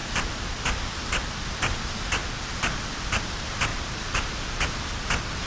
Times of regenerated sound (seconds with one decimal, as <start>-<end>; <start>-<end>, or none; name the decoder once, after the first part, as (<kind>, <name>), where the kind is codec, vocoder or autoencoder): 0.0-1.1 (vocoder, BigVGAN v2); 2.2-3.2; 3.7-4.3